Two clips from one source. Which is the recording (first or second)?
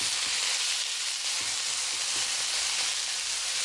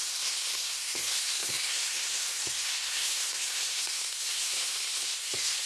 first